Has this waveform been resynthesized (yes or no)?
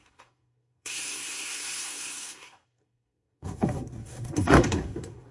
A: yes